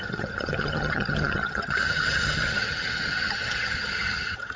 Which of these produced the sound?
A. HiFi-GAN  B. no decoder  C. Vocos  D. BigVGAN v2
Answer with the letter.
A